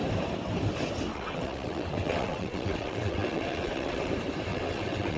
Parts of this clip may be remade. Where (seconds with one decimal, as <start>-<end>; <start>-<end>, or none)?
1.1-4.1; 4.5-5.2